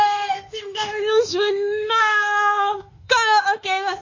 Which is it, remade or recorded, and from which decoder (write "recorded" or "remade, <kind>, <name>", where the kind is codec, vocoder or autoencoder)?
remade, autoencoder, DAC-VAE